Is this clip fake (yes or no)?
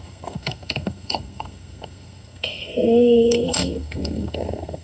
yes